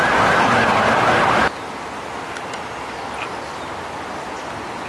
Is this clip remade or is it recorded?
recorded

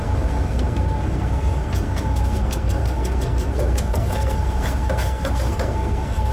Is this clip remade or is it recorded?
remade